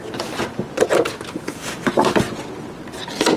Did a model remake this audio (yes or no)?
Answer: no